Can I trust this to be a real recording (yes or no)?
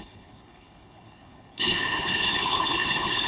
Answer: no